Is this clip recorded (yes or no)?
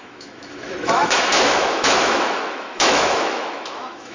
no